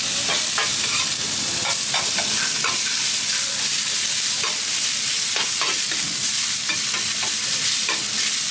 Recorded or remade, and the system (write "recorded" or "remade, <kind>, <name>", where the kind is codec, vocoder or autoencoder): remade, vocoder, BigVGAN v2